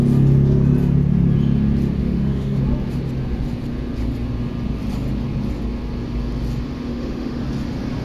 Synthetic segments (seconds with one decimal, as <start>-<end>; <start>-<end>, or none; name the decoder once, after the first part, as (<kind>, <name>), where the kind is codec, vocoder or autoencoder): 2.0-2.6 (autoencoder, DAC-VAE); 6.9-7.4